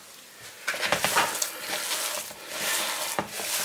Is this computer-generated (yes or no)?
no